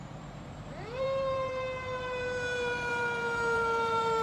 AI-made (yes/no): yes